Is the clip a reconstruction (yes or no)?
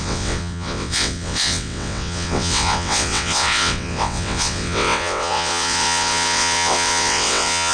yes